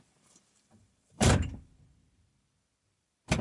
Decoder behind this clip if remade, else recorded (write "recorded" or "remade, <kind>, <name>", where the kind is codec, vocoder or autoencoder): remade, vocoder, BigVGAN v2